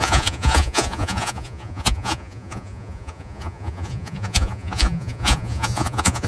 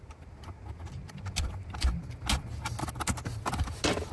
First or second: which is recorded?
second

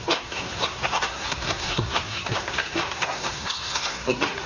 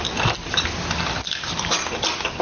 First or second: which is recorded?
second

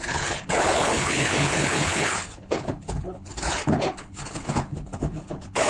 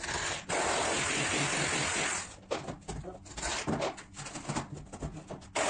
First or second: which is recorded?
second